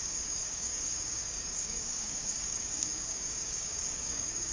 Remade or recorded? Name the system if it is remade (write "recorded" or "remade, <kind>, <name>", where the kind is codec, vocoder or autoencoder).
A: remade, codec, DAC